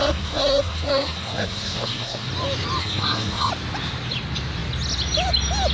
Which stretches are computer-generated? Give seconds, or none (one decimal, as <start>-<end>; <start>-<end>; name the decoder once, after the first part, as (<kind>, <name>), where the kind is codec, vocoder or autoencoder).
0.0-2.3 (codec, SNAC); 2.8-3.5